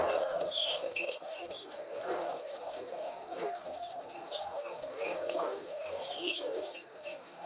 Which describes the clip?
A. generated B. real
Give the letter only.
A